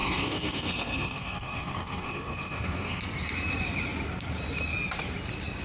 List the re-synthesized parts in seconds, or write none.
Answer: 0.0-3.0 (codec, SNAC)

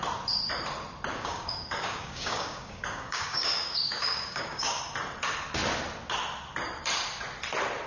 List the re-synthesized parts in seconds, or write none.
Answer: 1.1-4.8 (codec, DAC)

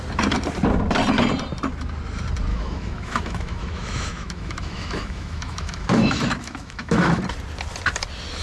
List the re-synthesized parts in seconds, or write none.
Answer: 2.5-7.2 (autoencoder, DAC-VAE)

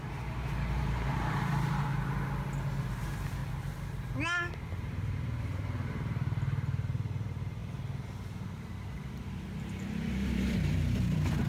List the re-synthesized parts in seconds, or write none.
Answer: 0.0-1.9 (vocoder, BigVGAN v2); 3.0-3.4; 4.7-7.6; 8.5-11.5

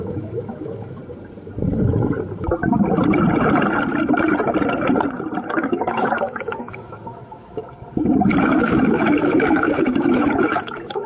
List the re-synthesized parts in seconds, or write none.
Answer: 0.0-1.0 (autoencoder, DAC-VAE); 5.4-7.6; 8.4-11.1

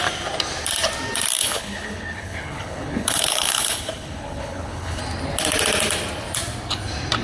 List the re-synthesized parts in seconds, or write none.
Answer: 1.4-5.0 (codec, HILCodec)

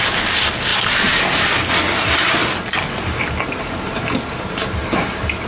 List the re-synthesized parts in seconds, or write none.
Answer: 0.7-1.5 (vocoder, BigVGAN v2)

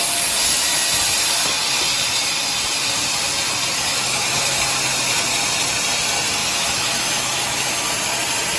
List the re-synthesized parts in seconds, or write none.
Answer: 3.9-4.6 (autoencoder, DAC-VAE); 6.4-7.9